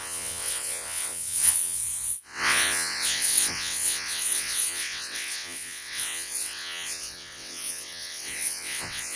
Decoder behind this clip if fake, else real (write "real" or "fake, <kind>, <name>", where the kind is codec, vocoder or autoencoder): fake, vocoder, WaveNeXt